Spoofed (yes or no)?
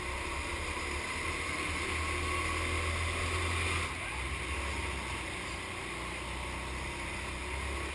no